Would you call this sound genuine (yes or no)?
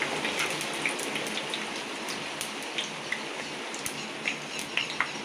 yes